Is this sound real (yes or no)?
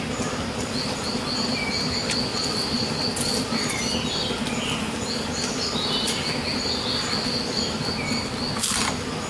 yes